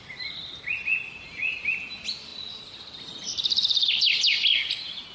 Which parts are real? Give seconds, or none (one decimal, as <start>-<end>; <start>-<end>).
0.0-5.1